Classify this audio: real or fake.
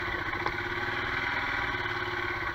real